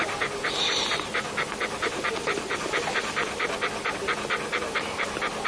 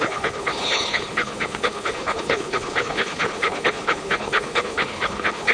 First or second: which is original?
first